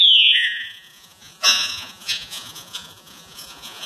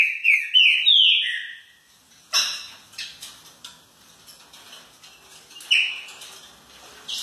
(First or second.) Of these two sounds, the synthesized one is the first